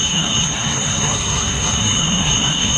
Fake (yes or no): yes